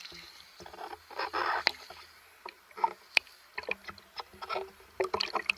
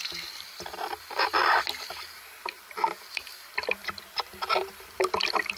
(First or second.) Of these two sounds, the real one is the first